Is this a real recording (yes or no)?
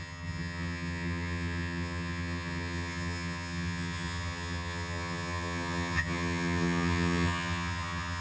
no